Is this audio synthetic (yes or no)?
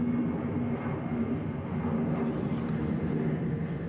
no